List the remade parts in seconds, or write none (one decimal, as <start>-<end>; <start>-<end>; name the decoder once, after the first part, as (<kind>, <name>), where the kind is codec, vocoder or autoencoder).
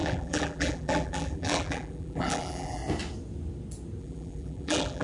0.0-2.8 (vocoder, BigVGAN v2); 4.0-5.0